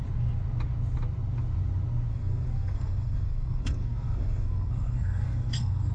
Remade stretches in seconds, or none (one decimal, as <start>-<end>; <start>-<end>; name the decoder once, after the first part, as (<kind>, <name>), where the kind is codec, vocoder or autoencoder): 2.1-5.9 (codec, SNAC)